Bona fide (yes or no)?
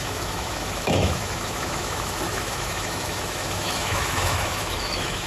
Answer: no